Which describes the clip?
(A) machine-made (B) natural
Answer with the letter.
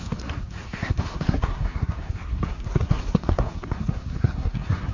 A